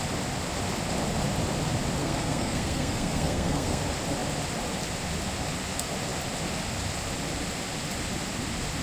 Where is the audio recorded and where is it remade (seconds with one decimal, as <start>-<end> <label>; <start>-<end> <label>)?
0.0-2.0 recorded; 2.0-3.8 remade; 3.8-8.8 recorded